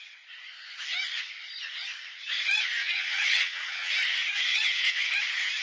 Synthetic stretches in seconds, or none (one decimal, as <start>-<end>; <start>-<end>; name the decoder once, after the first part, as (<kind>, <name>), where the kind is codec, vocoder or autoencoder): 2.8-3.9 (vocoder, WaveNeXt); 4.5-5.1